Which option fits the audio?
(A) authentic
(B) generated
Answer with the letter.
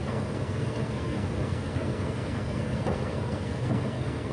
B